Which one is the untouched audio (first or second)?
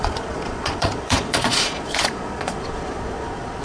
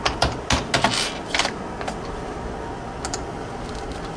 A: second